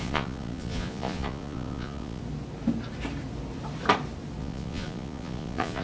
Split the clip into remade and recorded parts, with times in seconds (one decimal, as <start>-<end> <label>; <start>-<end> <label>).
0.0-2.2 remade; 2.2-4.4 recorded; 4.4-5.8 remade